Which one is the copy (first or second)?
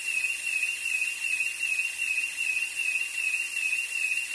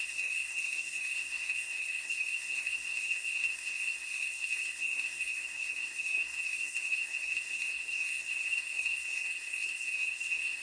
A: second